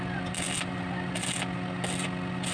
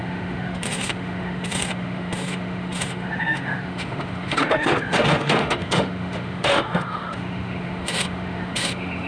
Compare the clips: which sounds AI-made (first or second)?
second